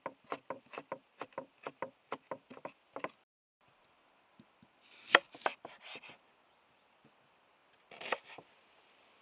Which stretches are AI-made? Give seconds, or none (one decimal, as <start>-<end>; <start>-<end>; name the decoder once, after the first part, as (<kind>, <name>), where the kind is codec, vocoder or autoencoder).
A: none